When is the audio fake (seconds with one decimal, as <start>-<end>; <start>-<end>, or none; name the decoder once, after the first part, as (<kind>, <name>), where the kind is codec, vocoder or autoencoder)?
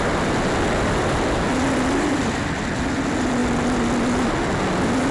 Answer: none